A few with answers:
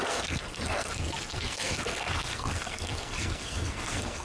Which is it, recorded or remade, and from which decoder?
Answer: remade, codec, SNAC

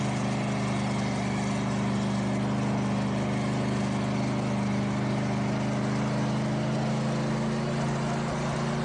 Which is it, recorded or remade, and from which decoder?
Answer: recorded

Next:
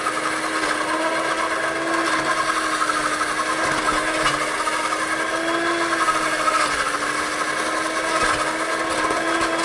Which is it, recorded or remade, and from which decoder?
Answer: recorded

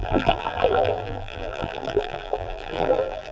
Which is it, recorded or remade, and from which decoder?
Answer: remade, vocoder, BigVGAN v2